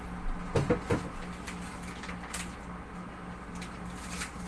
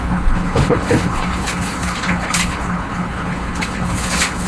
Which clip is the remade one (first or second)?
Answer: second